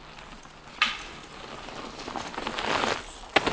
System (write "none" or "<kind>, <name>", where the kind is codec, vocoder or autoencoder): none